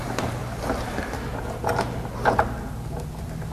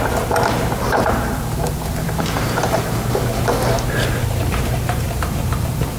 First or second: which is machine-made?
second